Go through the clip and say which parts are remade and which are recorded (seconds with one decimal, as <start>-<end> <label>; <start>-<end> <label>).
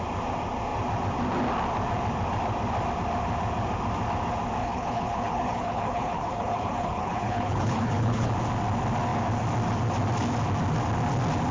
0.0-4.6 recorded; 4.6-8.3 remade; 8.3-11.5 recorded